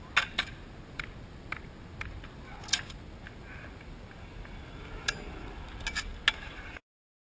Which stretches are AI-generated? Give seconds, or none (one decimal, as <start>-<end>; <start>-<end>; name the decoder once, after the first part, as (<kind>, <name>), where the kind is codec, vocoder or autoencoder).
none